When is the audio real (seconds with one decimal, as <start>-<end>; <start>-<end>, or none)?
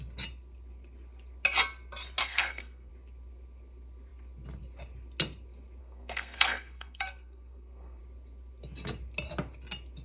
0.0-2.2; 2.9-5.8; 8.0-10.0